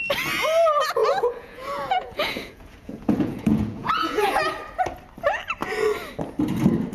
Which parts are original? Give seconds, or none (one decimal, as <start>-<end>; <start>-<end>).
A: 0.0-1.0; 4.5-6.9